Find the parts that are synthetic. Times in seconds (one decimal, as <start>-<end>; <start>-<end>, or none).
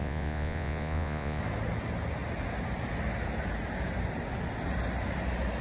0.0-1.4